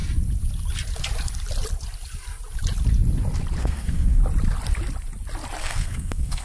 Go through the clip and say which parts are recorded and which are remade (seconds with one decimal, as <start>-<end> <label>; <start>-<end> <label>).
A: 0.0-3.6 recorded; 3.6-4.2 remade; 4.2-5.6 recorded; 5.6-6.4 remade